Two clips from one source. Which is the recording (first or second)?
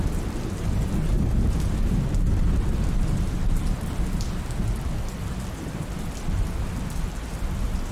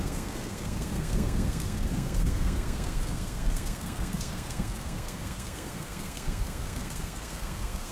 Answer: first